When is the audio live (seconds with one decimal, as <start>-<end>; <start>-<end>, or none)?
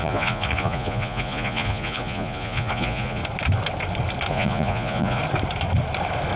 3.2-4.3; 5.2-6.4